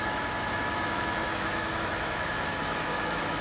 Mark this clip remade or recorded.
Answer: remade